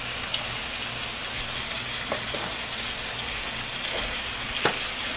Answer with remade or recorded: recorded